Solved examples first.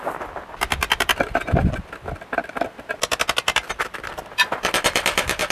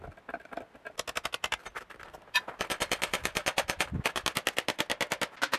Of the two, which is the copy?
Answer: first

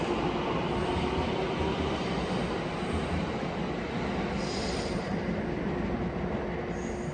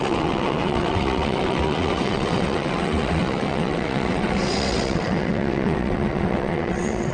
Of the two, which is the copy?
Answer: second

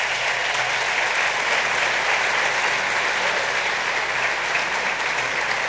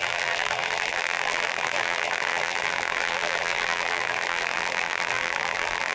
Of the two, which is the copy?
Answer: second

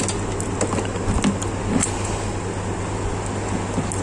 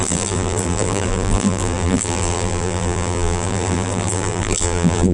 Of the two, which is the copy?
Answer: second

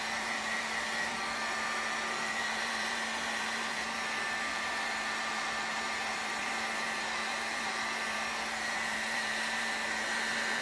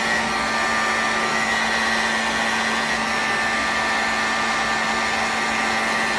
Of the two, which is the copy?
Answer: first